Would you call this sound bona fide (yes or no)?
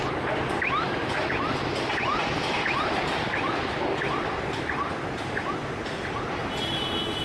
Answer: yes